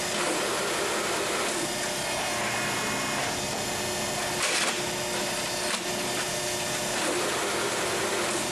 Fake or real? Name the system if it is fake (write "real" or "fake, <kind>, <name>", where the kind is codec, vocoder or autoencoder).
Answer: real